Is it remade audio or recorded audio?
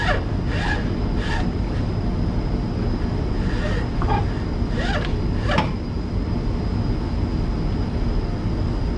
recorded